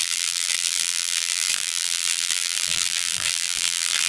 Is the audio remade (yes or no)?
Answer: yes